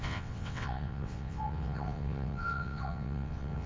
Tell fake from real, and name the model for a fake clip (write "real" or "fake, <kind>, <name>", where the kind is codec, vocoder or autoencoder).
fake, vocoder, WaveNeXt